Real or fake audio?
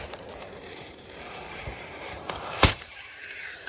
fake